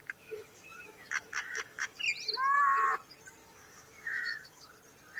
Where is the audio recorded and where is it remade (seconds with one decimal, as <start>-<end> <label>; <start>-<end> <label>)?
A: 0.0-2.0 remade; 2.0-3.4 recorded; 3.4-4.7 remade; 4.7-5.2 recorded